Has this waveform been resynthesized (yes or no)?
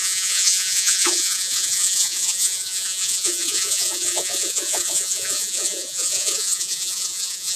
yes